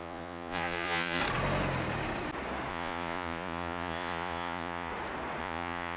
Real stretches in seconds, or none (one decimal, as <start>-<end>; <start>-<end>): 1.2-2.7; 4.9-5.4